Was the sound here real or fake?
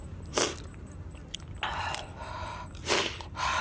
real